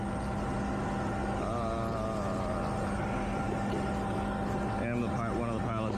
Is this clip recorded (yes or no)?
yes